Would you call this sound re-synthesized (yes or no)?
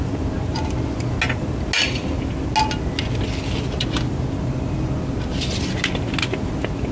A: no